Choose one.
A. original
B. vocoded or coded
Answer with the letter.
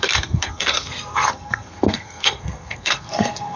B